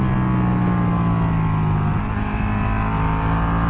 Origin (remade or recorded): recorded